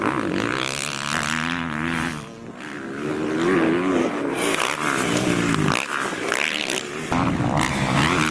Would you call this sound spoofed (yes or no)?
no